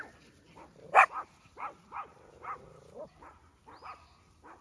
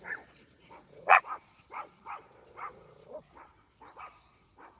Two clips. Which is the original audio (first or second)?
first